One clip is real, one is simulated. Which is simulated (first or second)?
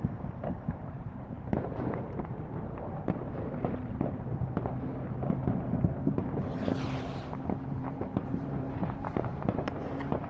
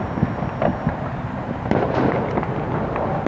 first